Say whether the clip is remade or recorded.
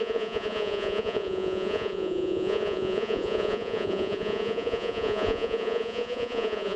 remade